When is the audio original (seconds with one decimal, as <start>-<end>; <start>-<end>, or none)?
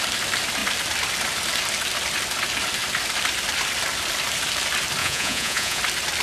0.0-5.0; 5.8-6.2